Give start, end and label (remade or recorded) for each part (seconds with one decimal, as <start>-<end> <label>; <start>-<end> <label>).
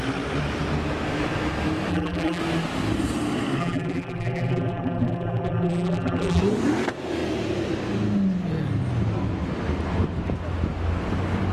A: 0.0-1.9 recorded; 1.9-2.4 remade; 2.4-3.6 recorded; 3.6-6.4 remade; 6.4-11.5 recorded